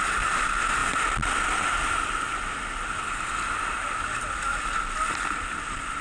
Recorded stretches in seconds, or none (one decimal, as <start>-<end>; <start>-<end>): 0.0-6.0